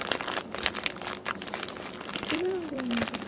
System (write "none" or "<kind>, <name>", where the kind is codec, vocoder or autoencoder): vocoder, BigVGAN v2